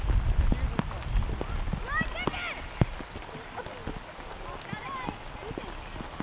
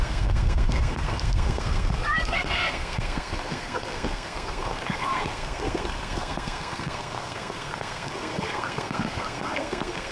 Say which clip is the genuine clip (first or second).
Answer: first